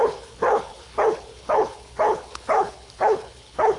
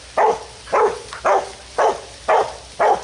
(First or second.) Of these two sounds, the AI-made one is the first